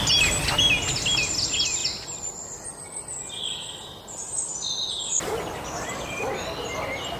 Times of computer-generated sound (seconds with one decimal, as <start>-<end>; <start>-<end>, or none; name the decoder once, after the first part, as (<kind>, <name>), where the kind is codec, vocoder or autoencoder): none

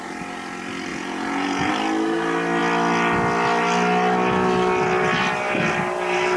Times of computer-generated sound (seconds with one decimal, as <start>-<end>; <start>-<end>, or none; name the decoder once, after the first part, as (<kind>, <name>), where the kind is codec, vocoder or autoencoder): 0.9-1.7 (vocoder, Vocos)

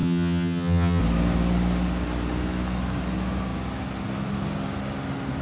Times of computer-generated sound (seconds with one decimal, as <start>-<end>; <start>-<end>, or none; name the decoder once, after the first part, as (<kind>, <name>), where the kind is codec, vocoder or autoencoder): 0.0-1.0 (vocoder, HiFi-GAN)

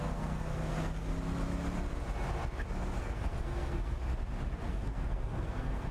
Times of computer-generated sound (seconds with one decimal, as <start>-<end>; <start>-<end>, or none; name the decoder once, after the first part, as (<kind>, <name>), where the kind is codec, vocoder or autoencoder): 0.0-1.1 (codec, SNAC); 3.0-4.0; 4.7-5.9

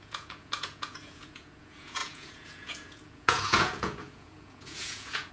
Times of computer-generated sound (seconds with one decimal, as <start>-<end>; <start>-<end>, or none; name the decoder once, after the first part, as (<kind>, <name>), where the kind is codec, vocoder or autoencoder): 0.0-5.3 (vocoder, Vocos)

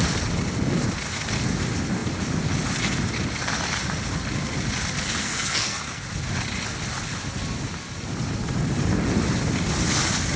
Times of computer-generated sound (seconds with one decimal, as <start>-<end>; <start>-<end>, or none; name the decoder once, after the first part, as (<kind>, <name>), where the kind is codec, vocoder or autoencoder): 5.2-6.0 (codec, SNAC)